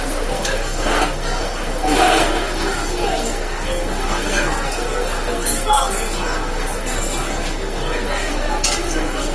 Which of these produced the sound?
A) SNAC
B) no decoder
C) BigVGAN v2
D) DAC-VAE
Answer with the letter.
A